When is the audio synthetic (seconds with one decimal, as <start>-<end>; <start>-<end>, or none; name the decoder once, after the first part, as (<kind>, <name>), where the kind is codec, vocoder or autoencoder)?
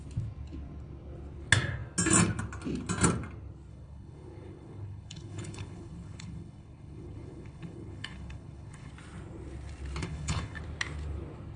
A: 3.7-8.9 (codec, HILCodec); 10.0-10.6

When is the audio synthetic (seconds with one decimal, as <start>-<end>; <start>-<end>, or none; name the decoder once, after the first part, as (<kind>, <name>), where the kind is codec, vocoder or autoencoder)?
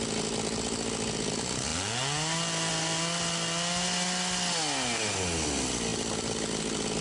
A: none